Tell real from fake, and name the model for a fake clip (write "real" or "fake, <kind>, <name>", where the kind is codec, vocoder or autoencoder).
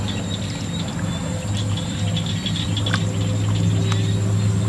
real